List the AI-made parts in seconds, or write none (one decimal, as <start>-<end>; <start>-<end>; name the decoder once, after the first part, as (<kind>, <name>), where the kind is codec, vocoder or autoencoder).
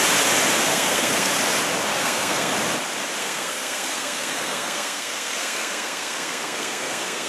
0.7-1.3 (codec, SNAC); 1.9-2.5; 3.2-7.3